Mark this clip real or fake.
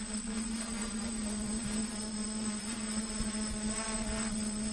fake